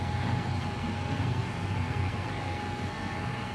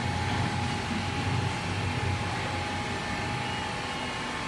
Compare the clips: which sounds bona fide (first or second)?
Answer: second